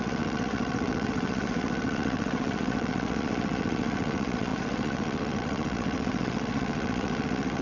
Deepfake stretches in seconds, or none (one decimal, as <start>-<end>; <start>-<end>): 0.0-7.6